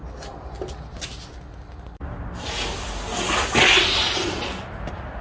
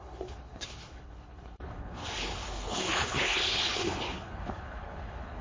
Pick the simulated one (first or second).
second